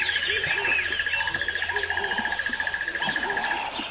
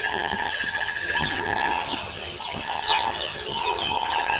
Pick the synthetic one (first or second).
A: second